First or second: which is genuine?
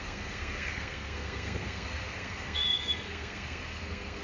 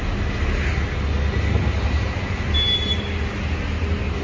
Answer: second